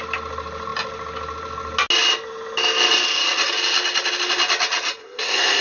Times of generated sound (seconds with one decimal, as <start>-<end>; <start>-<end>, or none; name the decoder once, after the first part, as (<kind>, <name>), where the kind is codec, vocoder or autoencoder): 5.0-5.6 (codec, SNAC)